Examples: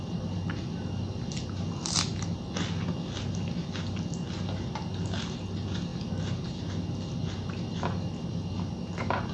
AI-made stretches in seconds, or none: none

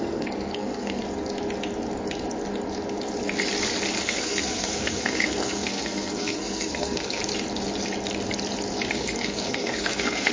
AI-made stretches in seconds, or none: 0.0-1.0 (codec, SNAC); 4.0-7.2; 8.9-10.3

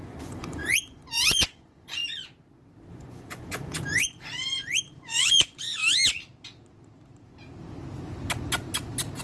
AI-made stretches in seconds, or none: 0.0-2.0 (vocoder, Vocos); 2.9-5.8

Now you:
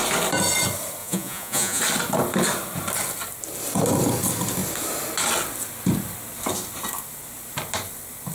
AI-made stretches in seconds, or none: 1.0-1.8 (vocoder, Vocos)